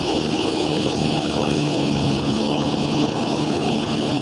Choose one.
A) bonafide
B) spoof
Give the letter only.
B